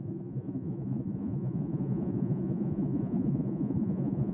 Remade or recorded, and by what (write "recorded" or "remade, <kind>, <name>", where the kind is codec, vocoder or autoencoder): remade, vocoder, Vocos